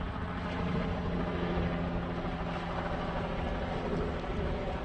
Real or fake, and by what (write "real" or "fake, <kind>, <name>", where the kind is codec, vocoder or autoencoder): real